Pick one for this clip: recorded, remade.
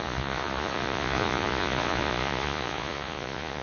remade